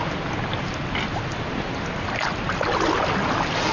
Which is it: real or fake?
real